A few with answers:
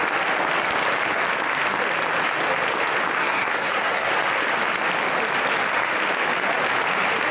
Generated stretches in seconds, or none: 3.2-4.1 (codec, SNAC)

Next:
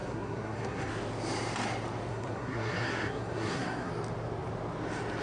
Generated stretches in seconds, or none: 0.0-0.9 (codec, SNAC); 2.1-3.9

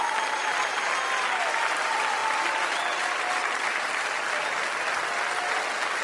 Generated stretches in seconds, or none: none

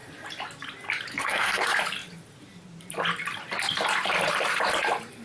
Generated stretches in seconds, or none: 1.1-1.6 (codec, SNAC)